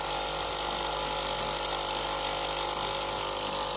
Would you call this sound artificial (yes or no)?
no